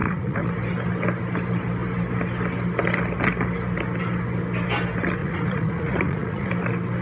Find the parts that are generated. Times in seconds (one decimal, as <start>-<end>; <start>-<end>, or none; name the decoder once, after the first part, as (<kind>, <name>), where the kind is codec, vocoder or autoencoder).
0.0-0.5 (vocoder, Vocos); 5.2-6.5